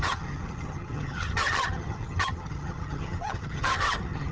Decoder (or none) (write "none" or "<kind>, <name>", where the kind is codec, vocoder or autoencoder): vocoder, HiFi-GAN